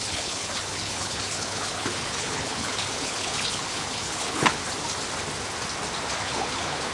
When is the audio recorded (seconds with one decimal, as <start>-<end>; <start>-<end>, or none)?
4.6-6.2